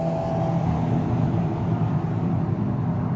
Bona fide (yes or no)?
no